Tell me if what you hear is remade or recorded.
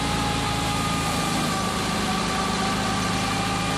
recorded